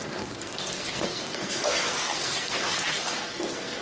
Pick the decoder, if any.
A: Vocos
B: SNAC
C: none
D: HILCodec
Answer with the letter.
B